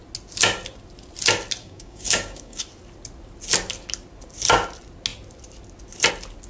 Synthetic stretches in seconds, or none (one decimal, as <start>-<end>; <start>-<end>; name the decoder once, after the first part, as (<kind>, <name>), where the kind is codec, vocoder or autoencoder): 1.6-2.6 (codec, DAC)